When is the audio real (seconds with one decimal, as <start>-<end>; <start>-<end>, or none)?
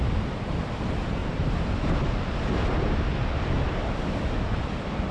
0.0-5.1